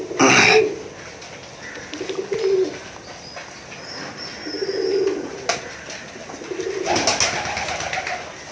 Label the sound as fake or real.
real